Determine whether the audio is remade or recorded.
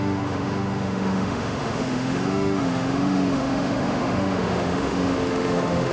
remade